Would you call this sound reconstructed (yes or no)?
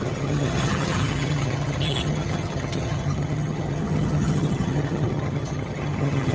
yes